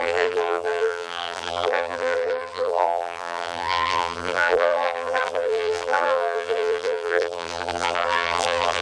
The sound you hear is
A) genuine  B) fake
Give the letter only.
B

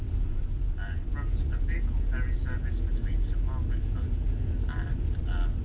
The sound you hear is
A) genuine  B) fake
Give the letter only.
A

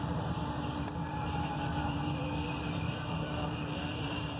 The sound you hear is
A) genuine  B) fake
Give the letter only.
B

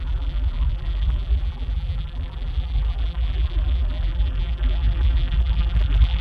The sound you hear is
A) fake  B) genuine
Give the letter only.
A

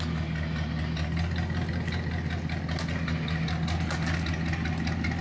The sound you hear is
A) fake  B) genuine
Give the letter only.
B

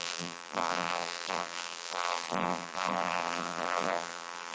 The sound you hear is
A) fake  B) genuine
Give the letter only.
A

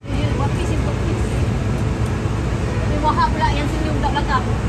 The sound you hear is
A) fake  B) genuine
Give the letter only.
B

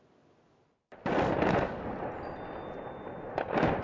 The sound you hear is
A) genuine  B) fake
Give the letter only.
A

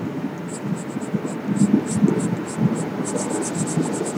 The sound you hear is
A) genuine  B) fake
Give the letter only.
A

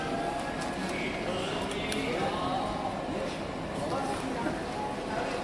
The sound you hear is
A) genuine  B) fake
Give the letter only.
A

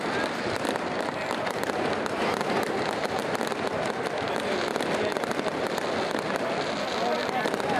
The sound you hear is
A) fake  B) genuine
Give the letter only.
A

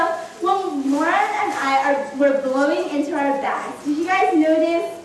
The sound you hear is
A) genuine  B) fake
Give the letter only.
A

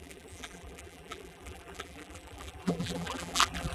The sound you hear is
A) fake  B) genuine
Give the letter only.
A